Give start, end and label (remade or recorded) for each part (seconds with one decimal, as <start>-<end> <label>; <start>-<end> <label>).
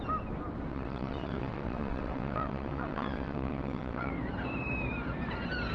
0.0-0.7 recorded; 0.7-4.1 remade; 4.1-5.7 recorded